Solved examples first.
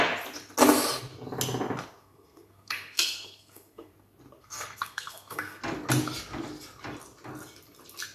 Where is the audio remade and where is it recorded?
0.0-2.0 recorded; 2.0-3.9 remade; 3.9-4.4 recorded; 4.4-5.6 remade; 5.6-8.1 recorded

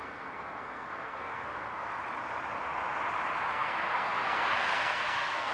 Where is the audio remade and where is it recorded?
0.0-1.9 remade; 1.9-3.5 recorded; 3.5-5.5 remade